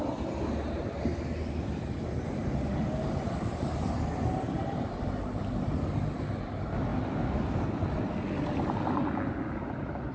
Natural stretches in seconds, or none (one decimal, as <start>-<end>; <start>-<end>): 0.0-10.1